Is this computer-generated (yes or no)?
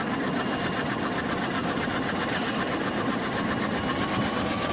no